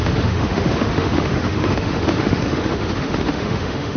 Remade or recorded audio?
remade